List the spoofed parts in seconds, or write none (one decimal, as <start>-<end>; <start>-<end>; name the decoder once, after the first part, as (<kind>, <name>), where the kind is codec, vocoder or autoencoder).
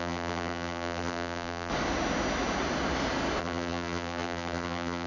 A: 0.0-1.7 (vocoder, BigVGAN v2); 3.4-5.1